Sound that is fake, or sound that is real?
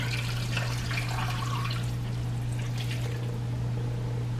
real